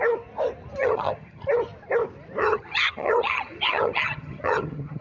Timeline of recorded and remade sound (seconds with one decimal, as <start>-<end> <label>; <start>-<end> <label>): 0.0-0.8 recorded; 0.8-1.4 remade; 1.4-2.4 recorded; 2.4-5.0 remade